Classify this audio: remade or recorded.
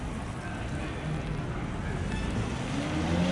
recorded